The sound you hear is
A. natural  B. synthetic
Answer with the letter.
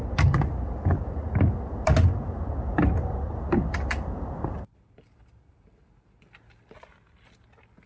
A